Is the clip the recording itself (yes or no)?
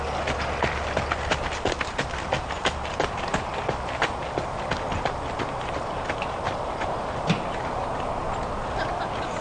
yes